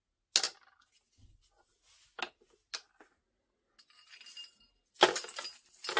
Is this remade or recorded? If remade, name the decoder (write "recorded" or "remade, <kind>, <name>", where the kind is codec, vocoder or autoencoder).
recorded